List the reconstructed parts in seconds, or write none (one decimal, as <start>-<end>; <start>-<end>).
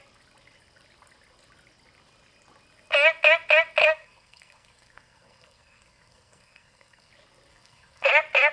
3.8-7.1; 7.5-8.1